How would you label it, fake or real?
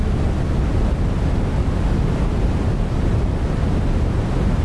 real